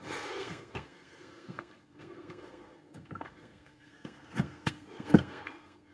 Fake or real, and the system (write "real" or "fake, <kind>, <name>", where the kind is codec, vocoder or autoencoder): fake, codec, SNAC